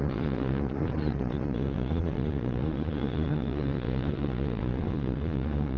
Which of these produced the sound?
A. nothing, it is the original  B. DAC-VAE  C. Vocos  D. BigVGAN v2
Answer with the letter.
C